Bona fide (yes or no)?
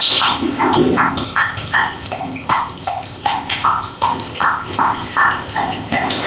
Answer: no